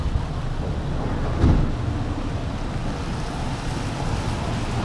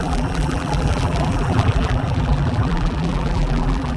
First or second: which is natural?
first